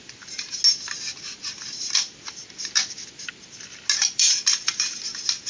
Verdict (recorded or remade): recorded